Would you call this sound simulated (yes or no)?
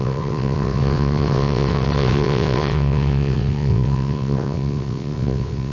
yes